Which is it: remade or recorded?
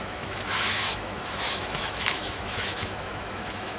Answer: remade